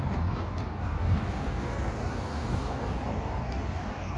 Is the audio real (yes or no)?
no